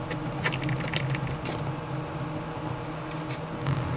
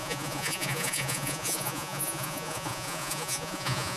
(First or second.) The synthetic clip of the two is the second